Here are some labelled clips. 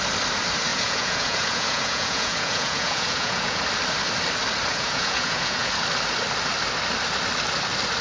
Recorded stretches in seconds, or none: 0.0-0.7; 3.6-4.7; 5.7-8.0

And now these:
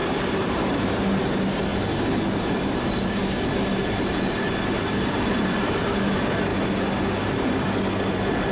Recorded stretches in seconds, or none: 1.7-2.6; 3.2-3.8; 6.5-8.5

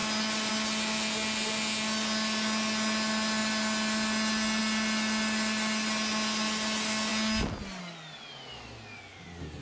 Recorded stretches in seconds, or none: 0.0-9.6

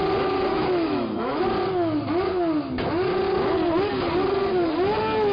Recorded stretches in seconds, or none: 0.0-0.5; 1.4-5.3

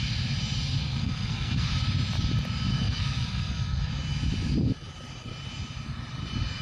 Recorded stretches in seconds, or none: 0.0-0.8; 1.7-2.7; 3.9-6.6

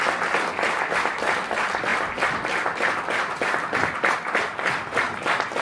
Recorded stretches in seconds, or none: 0.0-5.6

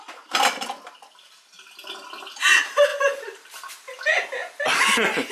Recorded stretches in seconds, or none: 0.0-5.3

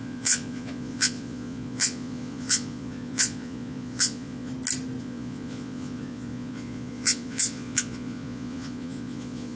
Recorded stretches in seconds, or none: 4.5-5.0